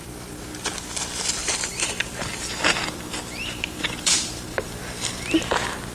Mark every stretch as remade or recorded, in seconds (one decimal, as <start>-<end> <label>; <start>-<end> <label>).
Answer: 0.0-1.4 recorded; 1.4-1.9 remade; 1.9-2.3 recorded; 2.3-4.8 remade; 4.8-5.9 recorded